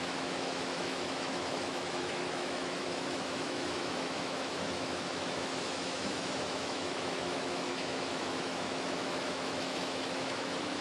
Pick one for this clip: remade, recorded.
remade